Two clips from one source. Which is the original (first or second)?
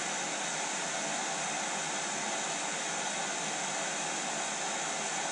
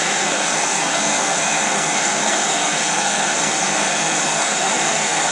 first